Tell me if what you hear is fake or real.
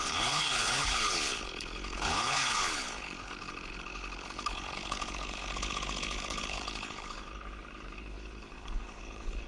fake